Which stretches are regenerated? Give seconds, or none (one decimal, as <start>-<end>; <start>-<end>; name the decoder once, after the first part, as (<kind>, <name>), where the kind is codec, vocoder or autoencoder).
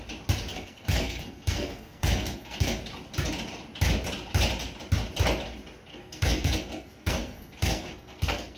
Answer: 0.5-2.8 (codec, SNAC); 5.9-8.6